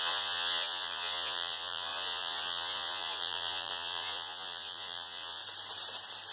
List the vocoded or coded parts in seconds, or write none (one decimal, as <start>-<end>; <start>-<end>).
0.0-5.4